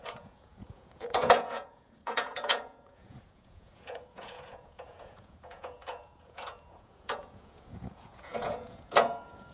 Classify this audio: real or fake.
fake